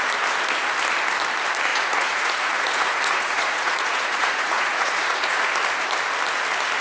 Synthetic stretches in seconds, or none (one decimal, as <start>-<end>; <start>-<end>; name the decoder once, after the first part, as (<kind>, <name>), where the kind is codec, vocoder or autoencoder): 1.7-5.5 (vocoder, Vocos)